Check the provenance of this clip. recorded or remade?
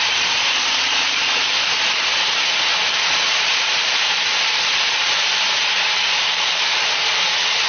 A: remade